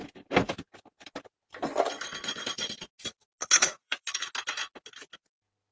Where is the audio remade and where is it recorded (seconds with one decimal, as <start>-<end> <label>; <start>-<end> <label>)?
0.0-3.4 recorded; 3.4-4.3 remade; 4.3-5.7 recorded